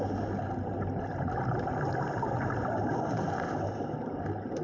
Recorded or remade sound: recorded